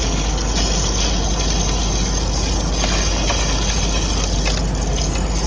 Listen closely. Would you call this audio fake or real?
real